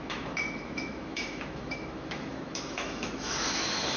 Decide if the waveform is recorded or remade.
remade